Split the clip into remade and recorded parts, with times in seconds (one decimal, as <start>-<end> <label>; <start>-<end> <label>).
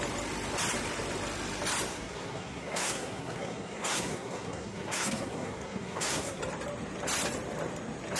0.0-1.9 recorded; 1.9-6.4 remade; 6.4-8.2 recorded